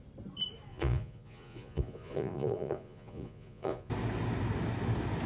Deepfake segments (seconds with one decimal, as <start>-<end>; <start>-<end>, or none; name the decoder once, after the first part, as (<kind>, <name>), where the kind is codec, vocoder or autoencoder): 0.7-3.9 (vocoder, Vocos)